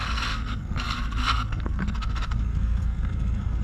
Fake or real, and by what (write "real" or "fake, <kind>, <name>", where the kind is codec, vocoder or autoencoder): fake, codec, SNAC